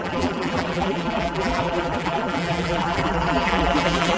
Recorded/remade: remade